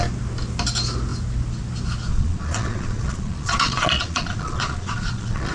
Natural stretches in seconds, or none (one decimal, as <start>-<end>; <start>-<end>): 0.0-2.1